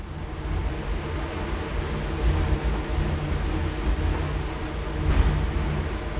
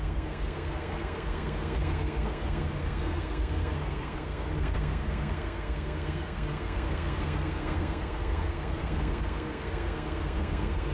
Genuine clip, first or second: first